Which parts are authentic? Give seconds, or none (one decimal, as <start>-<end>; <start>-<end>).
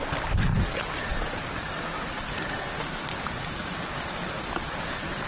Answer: 0.0-5.3